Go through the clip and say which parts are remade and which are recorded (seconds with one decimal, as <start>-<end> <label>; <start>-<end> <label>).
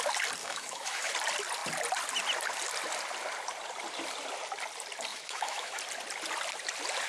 0.0-0.4 recorded; 0.4-1.1 remade; 1.1-5.1 recorded; 5.1-5.8 remade; 5.8-7.1 recorded